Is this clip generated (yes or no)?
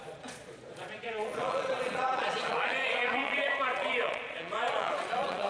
yes